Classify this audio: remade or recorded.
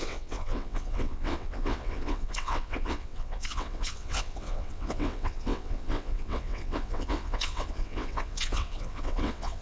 remade